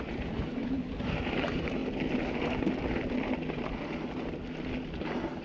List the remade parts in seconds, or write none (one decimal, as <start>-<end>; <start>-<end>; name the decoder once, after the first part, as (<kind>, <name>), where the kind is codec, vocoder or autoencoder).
0.0-1.8 (vocoder, BigVGAN v2); 5.0-5.4